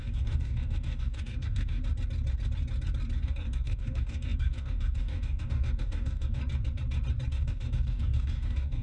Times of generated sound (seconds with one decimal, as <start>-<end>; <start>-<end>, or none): 0.0-1.8; 3.2-6.4; 7.3-8.8